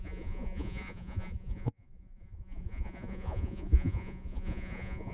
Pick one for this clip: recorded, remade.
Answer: remade